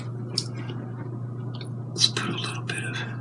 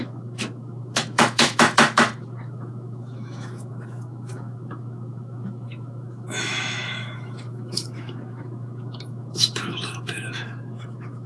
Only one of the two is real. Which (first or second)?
first